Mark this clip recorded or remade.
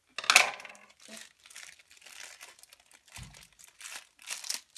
recorded